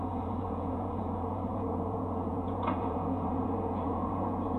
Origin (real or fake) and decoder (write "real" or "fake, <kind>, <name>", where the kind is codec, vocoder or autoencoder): fake, vocoder, Vocos